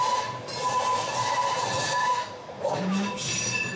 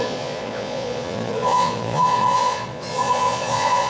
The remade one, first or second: second